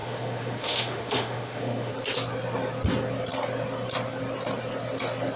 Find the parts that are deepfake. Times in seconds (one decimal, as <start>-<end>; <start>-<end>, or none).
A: 0.0-1.9